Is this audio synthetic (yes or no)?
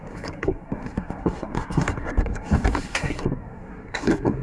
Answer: yes